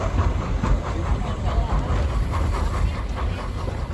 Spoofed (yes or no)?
no